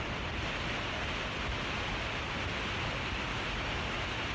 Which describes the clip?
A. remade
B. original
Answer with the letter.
B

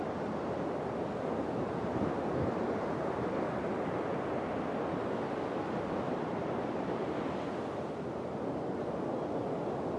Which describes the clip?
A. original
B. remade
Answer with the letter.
A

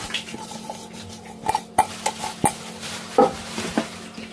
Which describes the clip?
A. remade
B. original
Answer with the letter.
B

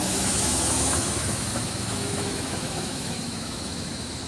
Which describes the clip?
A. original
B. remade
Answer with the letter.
B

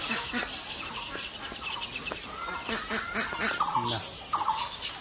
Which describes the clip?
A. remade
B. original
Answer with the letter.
B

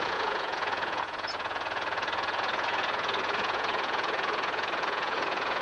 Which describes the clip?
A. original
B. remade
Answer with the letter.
B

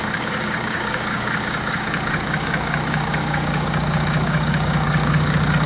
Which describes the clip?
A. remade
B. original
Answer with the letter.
A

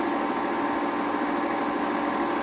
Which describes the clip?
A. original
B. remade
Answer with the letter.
A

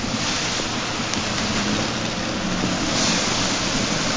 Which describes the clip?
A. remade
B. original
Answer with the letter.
B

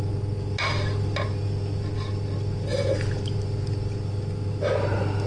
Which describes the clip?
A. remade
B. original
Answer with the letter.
B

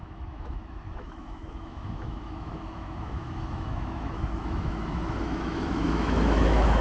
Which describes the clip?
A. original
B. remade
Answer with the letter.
B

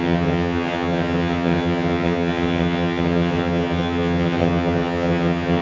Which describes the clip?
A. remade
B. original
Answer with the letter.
A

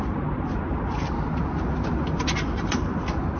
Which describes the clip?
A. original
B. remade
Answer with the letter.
A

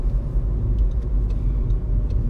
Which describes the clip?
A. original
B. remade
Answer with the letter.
A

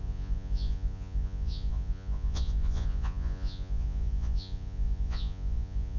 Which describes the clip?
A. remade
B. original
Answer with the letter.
A